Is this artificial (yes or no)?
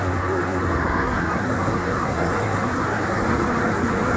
yes